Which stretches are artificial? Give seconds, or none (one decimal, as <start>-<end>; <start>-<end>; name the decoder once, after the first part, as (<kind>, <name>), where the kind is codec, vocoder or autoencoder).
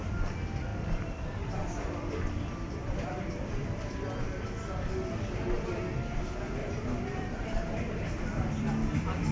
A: 0.7-4.4 (vocoder, BigVGAN v2); 6.6-8.7